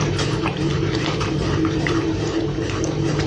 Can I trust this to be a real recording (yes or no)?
no